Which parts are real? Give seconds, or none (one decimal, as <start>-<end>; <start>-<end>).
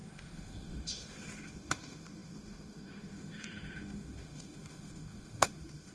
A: none